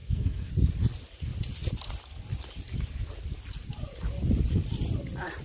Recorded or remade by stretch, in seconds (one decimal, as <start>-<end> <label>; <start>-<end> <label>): 0.0-0.5 remade; 0.5-5.4 recorded